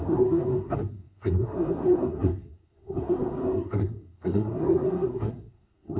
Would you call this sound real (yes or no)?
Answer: no